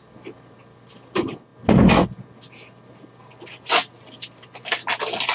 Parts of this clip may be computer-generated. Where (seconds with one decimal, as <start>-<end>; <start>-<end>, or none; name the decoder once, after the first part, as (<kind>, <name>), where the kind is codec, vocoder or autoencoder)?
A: none